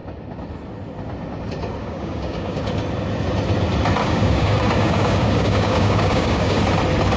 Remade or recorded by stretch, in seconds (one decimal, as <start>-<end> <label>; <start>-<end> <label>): 0.0-1.8 recorded; 1.8-2.6 remade; 2.6-4.0 recorded; 4.0-6.6 remade; 6.6-7.2 recorded

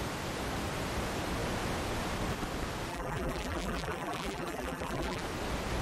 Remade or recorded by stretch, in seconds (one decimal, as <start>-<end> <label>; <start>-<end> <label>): 0.0-2.9 recorded; 2.9-5.2 remade; 5.2-5.8 recorded